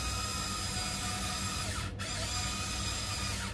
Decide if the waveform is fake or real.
real